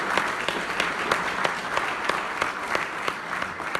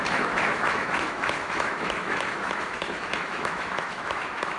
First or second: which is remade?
second